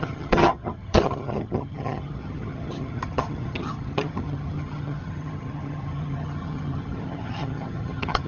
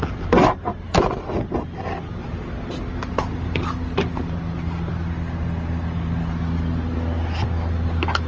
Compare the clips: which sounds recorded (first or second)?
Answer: second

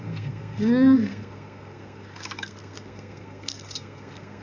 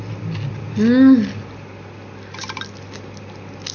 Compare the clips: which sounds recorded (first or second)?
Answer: second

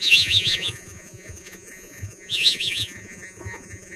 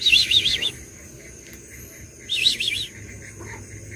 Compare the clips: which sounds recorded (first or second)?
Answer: second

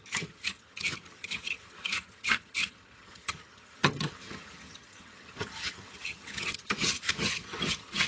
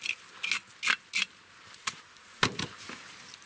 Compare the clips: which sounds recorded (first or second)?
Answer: second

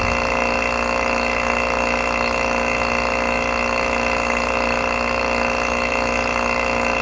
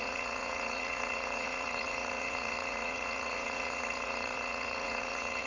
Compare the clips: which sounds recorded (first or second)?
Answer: first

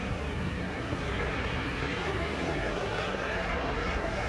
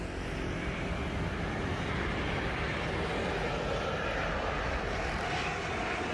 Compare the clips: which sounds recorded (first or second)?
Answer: second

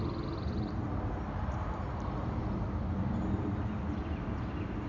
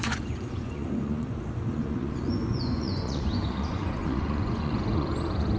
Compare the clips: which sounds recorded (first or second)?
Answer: first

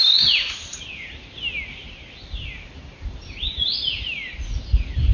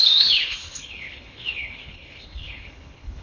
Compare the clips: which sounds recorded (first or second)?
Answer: first